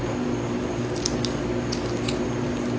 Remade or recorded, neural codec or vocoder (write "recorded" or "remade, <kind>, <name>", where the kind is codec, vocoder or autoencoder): recorded